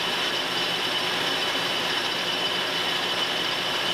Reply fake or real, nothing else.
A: fake